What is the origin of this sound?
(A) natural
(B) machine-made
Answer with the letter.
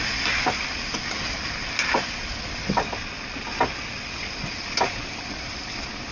A